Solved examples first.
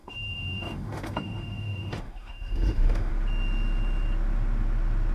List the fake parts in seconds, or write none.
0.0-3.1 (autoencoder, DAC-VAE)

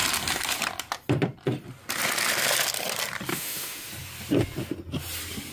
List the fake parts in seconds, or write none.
3.3-3.9 (autoencoder, DAC-VAE)

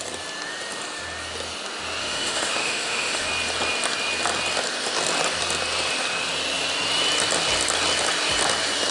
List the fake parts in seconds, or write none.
2.0-3.3 (autoencoder, DAC-VAE)

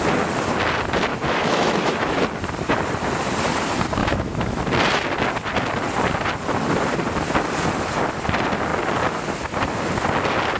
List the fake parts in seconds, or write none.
1.1-2.2 (autoencoder, DAC-VAE); 4.0-4.6

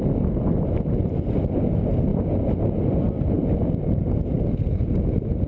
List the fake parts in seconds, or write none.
none

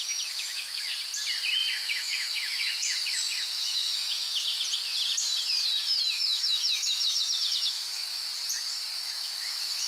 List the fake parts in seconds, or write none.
0.0-0.9 (autoencoder, DAC-VAE); 1.7-4.5; 6.1-8.3; 8.9-9.9

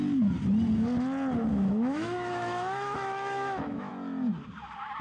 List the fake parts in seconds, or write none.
1.5-3.9 (autoencoder, DAC-VAE)